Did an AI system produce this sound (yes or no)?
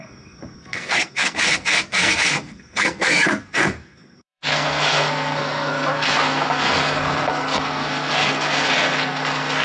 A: yes